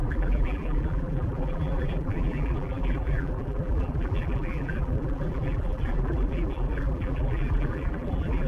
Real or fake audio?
fake